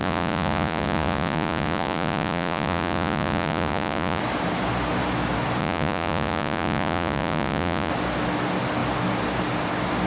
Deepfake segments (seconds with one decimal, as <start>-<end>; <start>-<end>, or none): 0.0-4.2; 5.6-7.9